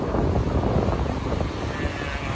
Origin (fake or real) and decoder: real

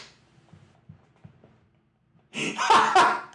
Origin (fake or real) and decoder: real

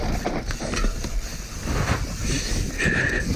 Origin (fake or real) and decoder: real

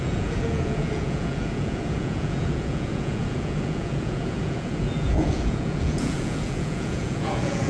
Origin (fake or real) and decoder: fake, vocoder, Vocos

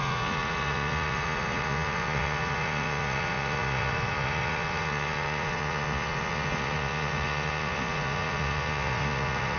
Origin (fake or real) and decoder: fake, vocoder, Vocos